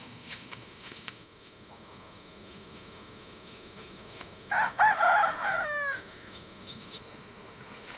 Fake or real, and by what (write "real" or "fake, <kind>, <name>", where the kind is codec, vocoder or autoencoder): fake, autoencoder, DAC-VAE